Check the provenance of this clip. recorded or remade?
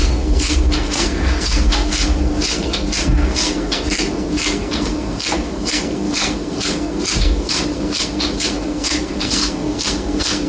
remade